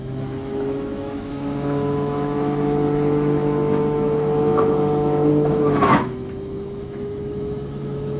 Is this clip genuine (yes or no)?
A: no